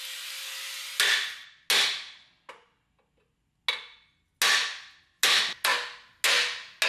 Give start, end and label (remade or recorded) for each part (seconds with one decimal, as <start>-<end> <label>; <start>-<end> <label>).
0.0-6.9 recorded